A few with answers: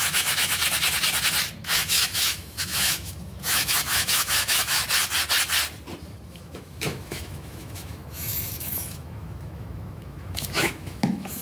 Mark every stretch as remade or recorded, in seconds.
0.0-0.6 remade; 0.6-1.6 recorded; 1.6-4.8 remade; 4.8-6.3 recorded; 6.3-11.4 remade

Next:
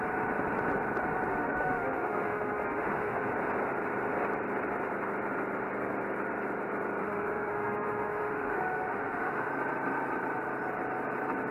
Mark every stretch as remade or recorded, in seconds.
0.0-1.3 recorded; 1.3-3.3 remade; 3.3-7.0 recorded; 7.0-9.5 remade; 9.5-11.5 recorded

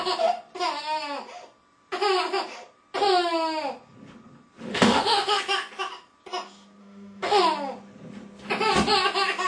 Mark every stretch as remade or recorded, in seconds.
0.0-4.7 recorded; 4.7-5.4 remade; 5.4-6.8 recorded; 6.8-7.4 remade; 7.4-9.5 recorded

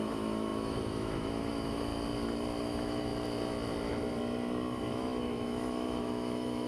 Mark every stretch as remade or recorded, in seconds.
0.0-1.9 remade; 1.9-2.6 recorded; 2.6-3.1 remade; 3.1-4.9 recorded; 4.9-6.7 remade

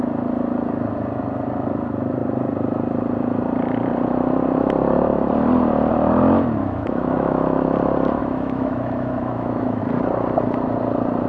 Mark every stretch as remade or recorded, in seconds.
0.0-6.6 recorded; 6.6-7.6 remade; 7.6-8.2 recorded; 8.2-9.8 remade; 9.8-11.3 recorded

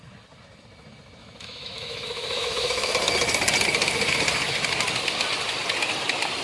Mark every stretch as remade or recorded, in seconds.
0.0-1.2 recorded; 1.2-2.9 remade; 2.9-6.4 recorded

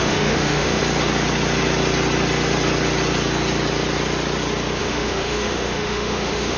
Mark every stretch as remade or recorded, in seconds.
0.0-0.8 remade; 0.8-4.8 recorded; 4.8-6.6 remade